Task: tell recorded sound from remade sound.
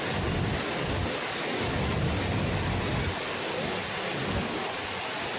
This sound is recorded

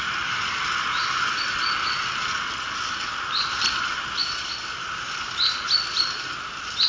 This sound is recorded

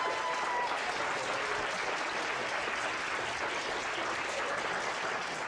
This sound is recorded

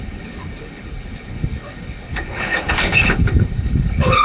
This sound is remade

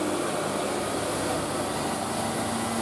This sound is recorded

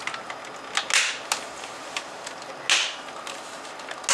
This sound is recorded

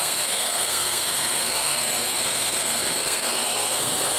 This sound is remade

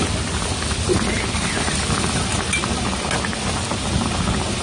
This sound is recorded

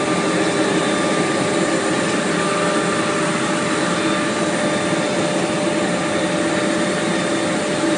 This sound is recorded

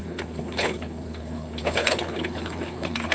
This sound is remade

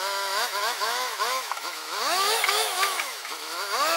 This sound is remade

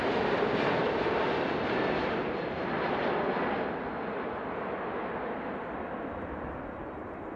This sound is recorded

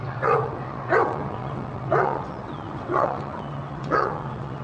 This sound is remade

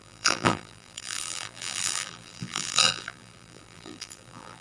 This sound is remade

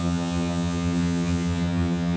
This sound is remade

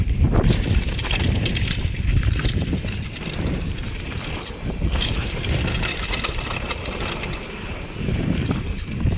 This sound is remade